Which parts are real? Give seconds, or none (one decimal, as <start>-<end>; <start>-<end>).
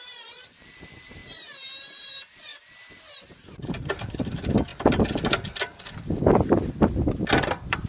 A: 1.2-1.9; 2.5-3.1